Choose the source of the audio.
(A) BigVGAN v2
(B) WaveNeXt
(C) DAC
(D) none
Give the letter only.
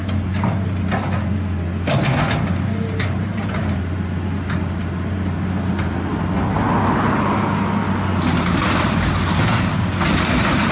D